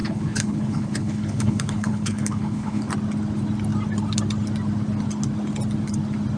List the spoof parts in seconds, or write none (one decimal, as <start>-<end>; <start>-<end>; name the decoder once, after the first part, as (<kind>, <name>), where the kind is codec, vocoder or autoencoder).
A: 0.0-2.9 (codec, HILCodec)